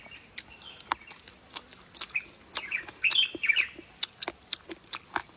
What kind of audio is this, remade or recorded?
recorded